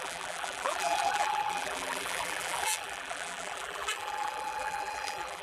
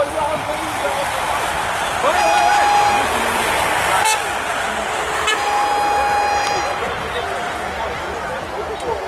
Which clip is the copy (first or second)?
first